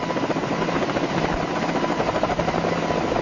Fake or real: real